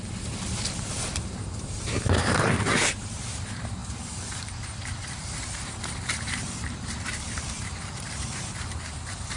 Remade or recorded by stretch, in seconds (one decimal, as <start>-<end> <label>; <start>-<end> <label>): 0.0-9.4 remade